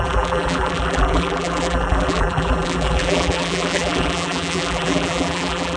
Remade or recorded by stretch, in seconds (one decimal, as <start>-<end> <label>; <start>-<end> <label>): 0.0-5.8 remade